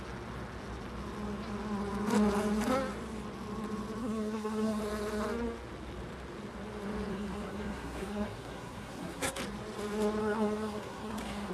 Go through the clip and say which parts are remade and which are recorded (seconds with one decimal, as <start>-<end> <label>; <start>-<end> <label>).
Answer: 0.0-4.0 recorded; 4.0-4.8 remade; 4.8-7.1 recorded; 7.1-9.4 remade; 9.4-10.2 recorded; 10.2-11.5 remade